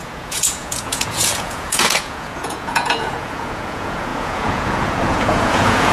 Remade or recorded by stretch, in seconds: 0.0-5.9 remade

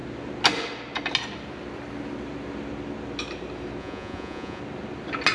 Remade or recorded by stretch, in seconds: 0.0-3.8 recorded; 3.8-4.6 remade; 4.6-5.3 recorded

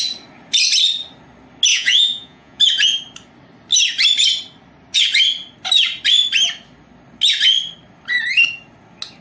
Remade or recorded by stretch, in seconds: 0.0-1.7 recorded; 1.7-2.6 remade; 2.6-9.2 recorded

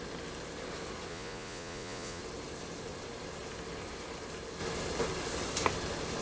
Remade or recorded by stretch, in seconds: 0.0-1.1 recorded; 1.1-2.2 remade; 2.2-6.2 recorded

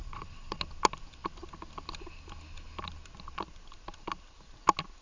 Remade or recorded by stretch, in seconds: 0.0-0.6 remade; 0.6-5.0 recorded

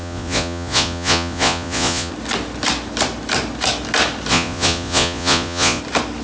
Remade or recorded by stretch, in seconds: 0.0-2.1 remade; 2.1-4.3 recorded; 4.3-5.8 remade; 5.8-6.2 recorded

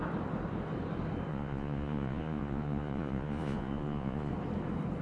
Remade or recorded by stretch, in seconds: 0.0-1.3 recorded; 1.3-4.3 remade; 4.3-5.0 recorded

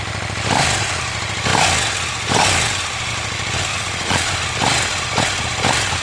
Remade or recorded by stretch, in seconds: 0.0-3.7 recorded; 3.7-4.3 remade; 4.3-6.0 recorded